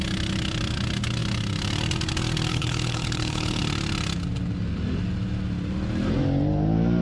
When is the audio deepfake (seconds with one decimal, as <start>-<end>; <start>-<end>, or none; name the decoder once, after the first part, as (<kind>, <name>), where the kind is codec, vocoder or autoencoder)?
2.5-3.6 (codec, HILCodec)